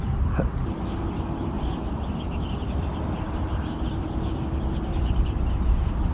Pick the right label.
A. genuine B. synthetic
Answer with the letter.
A